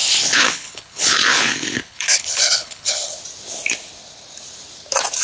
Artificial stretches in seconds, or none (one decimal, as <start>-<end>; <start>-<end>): 0.0-3.1